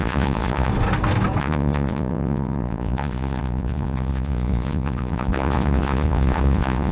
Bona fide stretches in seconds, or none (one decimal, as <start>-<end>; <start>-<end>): 0.7-1.4